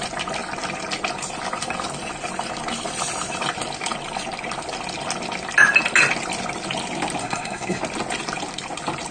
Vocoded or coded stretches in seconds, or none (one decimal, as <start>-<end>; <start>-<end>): 7.2-7.8